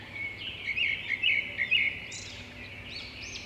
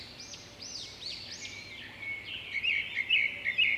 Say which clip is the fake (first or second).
first